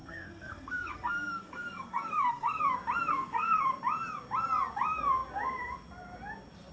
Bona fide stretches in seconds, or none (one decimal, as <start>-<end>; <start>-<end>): 2.6-3.1; 3.6-6.7